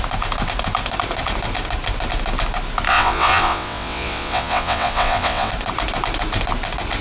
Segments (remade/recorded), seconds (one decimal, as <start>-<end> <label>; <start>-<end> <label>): 0.0-2.9 recorded; 2.9-5.5 remade; 5.5-7.0 recorded